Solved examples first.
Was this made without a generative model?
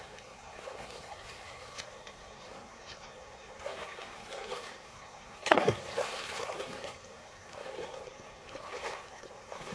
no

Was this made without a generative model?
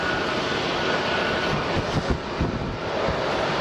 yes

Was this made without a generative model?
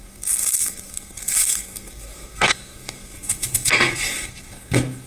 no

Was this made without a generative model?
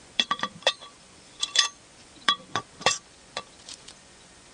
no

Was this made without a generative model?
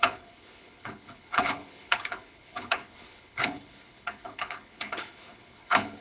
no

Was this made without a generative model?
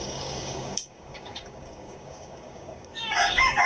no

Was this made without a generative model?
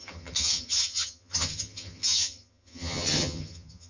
no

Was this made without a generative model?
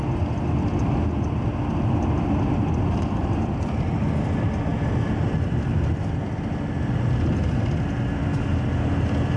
yes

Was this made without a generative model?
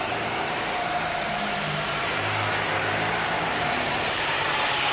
no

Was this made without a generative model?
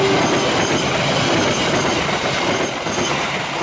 yes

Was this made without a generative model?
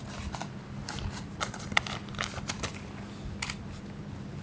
yes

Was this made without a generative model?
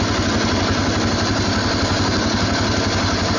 yes